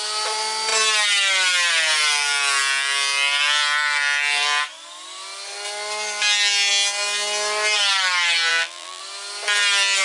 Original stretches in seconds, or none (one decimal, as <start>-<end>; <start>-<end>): 0.0-8.5; 9.0-10.0